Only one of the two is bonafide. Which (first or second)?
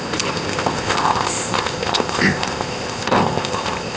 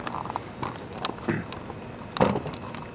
second